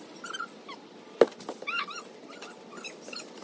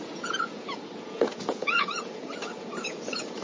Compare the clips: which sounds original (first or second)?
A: first